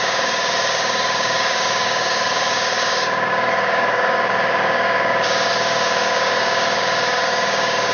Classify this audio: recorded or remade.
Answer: remade